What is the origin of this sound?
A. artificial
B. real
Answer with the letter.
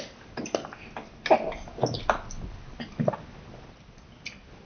B